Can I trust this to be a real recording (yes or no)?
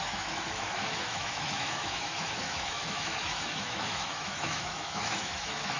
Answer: no